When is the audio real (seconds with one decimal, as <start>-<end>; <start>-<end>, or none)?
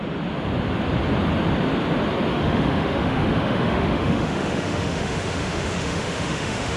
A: 0.0-2.3